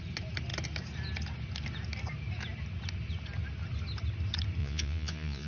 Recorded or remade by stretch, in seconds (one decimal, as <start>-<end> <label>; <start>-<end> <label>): 0.0-4.6 recorded; 4.6-5.5 remade